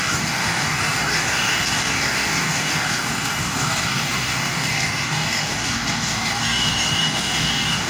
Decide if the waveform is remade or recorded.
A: remade